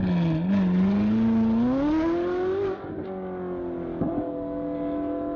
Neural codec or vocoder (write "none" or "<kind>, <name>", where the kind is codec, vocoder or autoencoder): none